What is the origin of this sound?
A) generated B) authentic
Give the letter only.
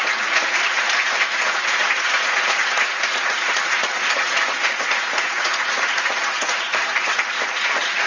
A